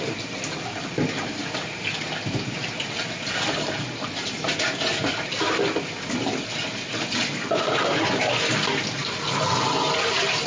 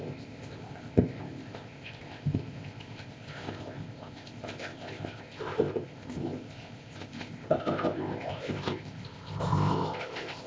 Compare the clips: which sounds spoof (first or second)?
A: second